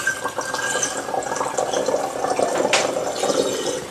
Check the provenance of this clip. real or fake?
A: real